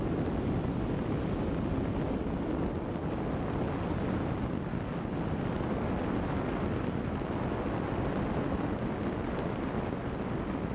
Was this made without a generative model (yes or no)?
yes